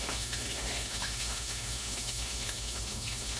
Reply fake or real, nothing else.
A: fake